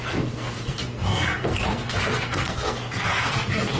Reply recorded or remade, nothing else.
remade